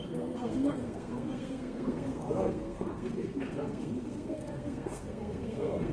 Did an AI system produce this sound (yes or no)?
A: yes